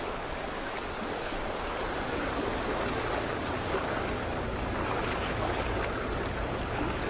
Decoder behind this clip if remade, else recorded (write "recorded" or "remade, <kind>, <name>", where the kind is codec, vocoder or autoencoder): remade, codec, DAC